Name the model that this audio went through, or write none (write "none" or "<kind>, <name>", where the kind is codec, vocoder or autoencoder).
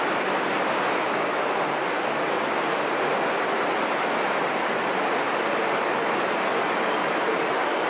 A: none